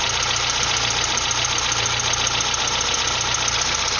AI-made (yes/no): no